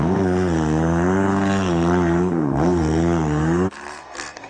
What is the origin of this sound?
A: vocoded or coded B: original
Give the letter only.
A